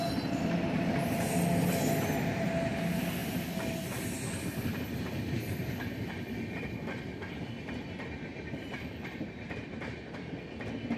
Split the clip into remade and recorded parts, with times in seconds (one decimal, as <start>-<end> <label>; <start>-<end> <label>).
0.0-0.9 remade; 0.9-8.3 recorded; 8.3-10.1 remade; 10.1-11.0 recorded